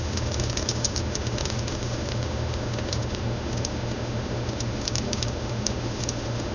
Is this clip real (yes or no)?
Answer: no